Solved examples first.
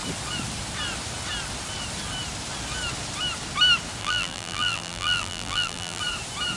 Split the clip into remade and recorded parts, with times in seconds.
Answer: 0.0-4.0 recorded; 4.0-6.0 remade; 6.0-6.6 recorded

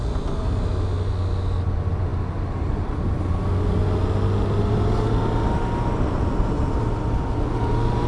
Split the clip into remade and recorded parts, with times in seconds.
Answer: 0.0-8.1 recorded

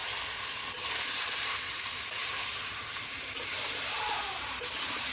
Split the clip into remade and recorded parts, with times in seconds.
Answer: 0.0-0.8 recorded; 0.8-5.1 remade